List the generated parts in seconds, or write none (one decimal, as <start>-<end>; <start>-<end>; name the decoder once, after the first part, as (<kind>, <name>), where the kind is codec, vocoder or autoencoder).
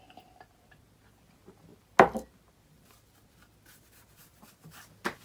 none